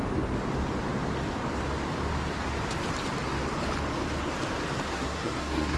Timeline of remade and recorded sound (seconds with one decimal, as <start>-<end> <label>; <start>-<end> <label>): 0.0-4.9 recorded; 4.9-5.8 remade

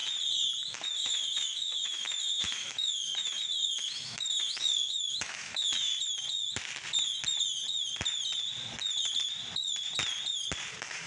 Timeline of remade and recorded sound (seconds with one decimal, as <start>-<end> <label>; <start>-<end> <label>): 0.0-0.7 recorded; 0.7-5.9 remade; 5.9-10.7 recorded; 10.7-11.1 remade